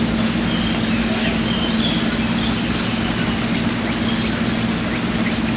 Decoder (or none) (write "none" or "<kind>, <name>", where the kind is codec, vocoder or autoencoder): none